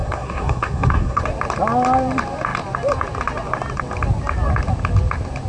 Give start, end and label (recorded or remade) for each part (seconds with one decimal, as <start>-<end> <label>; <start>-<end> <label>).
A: 0.0-1.2 remade; 1.2-5.5 recorded